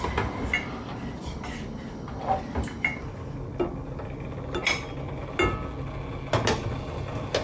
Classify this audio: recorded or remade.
recorded